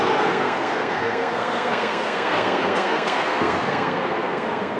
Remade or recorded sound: remade